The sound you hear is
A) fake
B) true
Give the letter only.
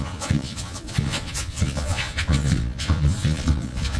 A